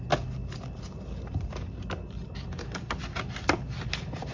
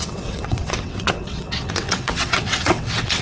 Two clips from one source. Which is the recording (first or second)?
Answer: first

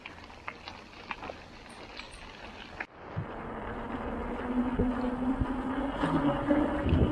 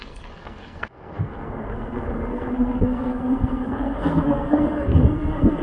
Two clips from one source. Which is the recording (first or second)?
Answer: first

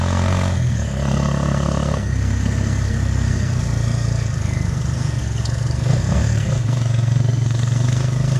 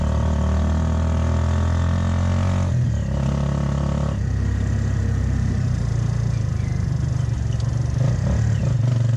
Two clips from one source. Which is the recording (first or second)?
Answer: second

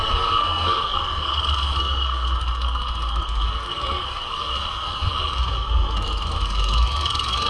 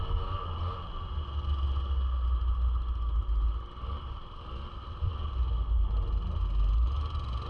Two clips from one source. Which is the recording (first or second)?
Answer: second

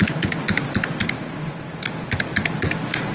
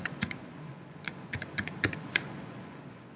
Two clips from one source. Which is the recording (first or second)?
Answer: first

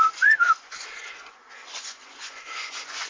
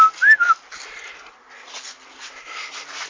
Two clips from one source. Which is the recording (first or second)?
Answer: second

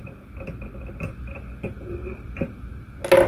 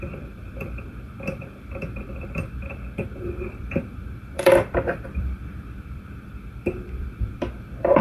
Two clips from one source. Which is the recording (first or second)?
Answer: first